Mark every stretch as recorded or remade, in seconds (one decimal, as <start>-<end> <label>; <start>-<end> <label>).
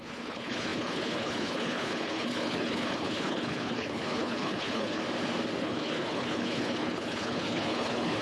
0.0-5.0 remade; 5.0-5.6 recorded; 5.6-8.2 remade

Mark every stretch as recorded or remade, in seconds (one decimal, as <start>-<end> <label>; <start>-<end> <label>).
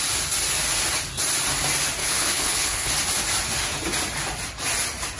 0.0-2.0 recorded; 2.0-2.9 remade; 2.9-5.2 recorded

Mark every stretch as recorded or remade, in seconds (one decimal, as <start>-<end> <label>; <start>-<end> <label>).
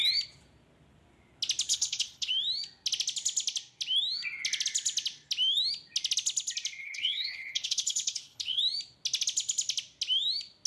0.0-1.7 recorded; 1.7-2.3 remade; 2.3-6.8 recorded; 6.8-8.6 remade; 8.6-10.7 recorded